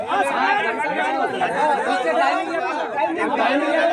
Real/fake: real